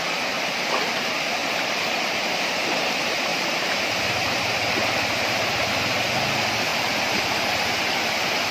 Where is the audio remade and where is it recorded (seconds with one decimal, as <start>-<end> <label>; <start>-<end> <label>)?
0.0-1.4 recorded; 1.4-2.8 remade; 2.8-3.3 recorded; 3.3-5.7 remade; 5.7-6.7 recorded; 6.7-7.6 remade; 7.6-8.5 recorded